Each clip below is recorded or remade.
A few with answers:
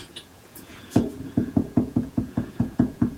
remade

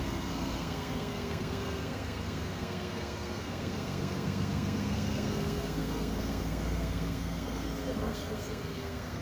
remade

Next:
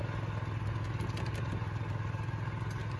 recorded